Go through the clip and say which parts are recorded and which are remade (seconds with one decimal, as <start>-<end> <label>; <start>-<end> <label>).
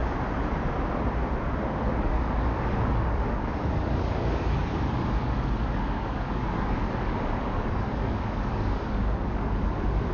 0.0-1.9 recorded; 1.9-10.1 remade